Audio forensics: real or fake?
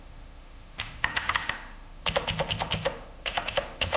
fake